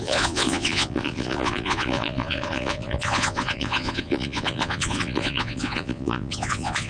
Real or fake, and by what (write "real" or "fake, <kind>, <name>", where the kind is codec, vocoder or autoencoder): fake, vocoder, Vocos